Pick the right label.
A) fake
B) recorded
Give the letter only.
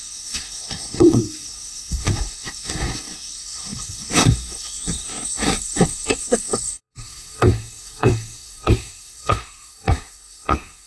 A